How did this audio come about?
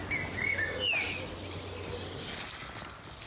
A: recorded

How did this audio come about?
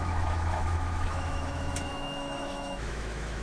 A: remade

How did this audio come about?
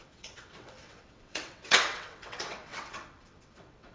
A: remade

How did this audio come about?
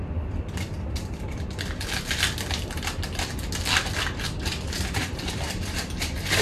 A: remade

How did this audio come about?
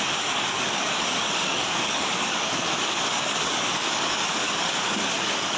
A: remade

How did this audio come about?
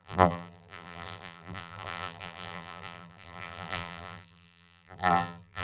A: remade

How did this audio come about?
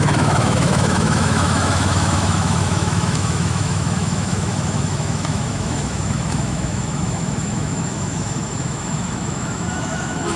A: remade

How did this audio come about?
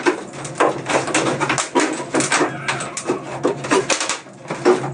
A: recorded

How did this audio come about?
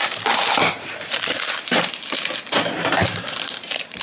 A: remade